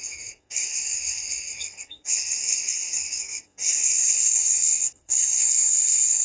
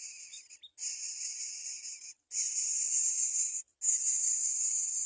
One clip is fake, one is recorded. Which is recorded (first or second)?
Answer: second